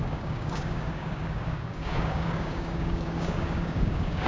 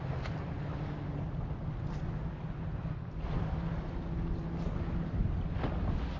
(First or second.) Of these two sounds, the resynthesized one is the first